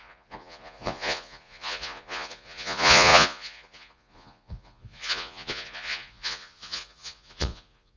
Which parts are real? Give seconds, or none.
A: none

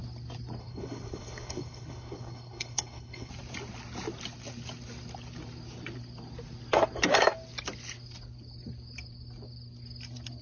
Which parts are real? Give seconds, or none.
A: 0.0-0.6; 3.3-10.4

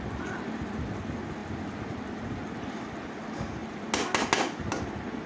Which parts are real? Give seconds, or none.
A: 0.0-5.3

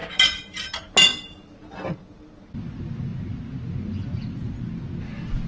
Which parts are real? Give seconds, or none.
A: 0.0-5.5

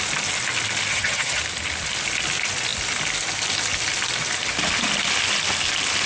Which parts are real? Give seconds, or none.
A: 0.0-0.9; 1.4-6.1

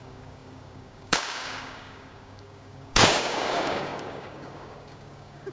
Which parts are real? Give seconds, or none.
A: none